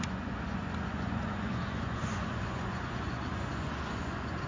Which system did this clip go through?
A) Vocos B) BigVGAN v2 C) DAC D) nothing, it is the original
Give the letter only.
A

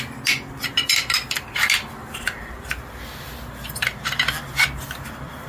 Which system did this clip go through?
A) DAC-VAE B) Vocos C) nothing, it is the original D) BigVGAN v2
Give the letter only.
C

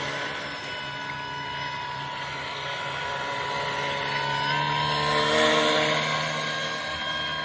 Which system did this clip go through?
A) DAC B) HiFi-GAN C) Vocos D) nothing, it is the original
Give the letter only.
D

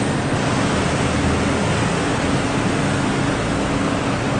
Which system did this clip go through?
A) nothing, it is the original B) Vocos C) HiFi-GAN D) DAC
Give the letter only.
A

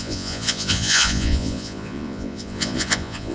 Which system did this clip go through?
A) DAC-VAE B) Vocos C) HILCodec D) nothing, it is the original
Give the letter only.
B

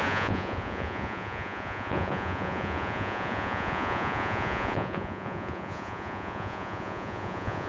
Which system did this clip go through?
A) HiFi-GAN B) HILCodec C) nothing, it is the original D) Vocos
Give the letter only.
D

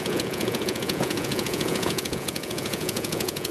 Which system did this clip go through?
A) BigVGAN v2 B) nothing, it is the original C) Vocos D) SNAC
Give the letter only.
C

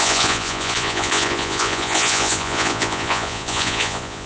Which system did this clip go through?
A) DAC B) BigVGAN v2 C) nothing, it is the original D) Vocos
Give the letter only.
D